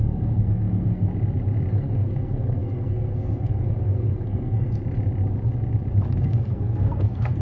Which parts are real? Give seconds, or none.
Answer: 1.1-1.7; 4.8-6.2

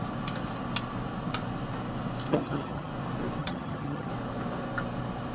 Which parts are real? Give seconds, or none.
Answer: 0.0-2.3; 2.9-3.4; 4.1-5.3

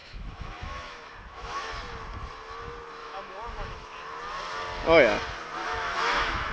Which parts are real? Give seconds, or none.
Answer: 1.7-3.0; 4.2-5.6

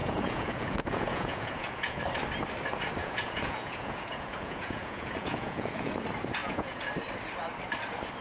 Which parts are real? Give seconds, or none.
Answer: 2.0-3.0; 5.9-6.4; 6.9-8.2